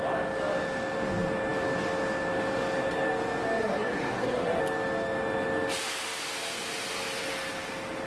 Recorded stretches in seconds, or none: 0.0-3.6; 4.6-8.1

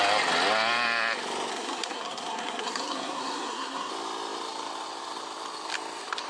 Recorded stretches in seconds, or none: 0.0-1.5; 3.9-6.3

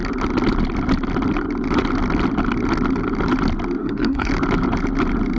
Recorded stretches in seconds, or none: 0.0-3.8; 4.3-5.4

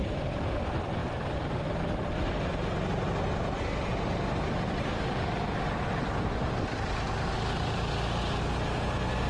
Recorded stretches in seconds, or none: 0.0-9.3